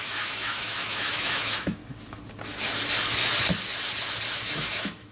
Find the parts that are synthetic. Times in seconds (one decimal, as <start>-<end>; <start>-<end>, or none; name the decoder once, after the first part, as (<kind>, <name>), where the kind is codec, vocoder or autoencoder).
0.0-1.8 (autoencoder, DAC-VAE); 4.3-5.1